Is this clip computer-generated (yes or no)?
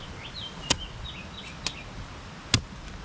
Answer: no